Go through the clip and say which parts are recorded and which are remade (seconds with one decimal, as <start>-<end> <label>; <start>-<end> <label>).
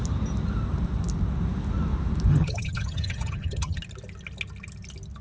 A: 0.0-2.3 recorded; 2.3-3.8 remade; 3.8-5.2 recorded